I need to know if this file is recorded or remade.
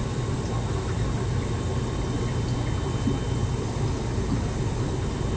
recorded